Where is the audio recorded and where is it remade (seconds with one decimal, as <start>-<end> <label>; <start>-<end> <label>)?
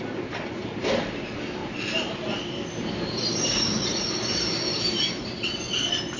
0.0-1.6 remade; 1.6-2.9 recorded; 2.9-6.2 remade